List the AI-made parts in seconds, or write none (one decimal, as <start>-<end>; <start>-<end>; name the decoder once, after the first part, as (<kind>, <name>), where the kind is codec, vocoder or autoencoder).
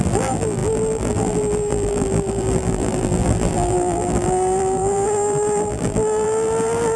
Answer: 0.0-7.0 (vocoder, BigVGAN v2)